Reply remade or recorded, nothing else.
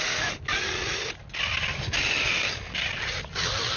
recorded